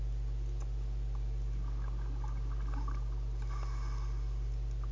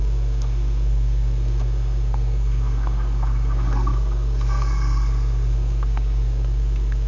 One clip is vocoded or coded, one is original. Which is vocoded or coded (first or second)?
second